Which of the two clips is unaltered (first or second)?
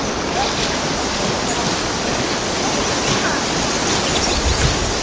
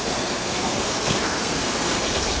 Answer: first